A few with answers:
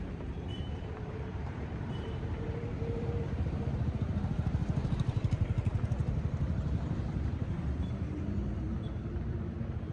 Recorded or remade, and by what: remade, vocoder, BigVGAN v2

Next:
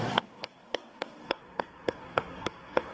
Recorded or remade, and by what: remade, codec, SNAC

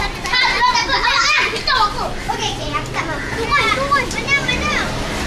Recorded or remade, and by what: recorded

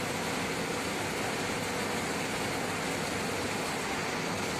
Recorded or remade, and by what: recorded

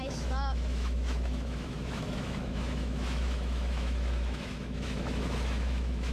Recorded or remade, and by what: remade, autoencoder, DAC-VAE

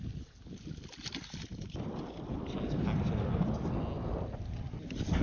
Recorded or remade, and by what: recorded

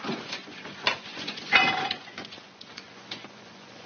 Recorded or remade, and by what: remade, vocoder, Vocos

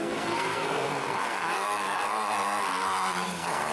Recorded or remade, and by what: remade, codec, SNAC